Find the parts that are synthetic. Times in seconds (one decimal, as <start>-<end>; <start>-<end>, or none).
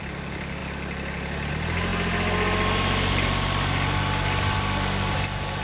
none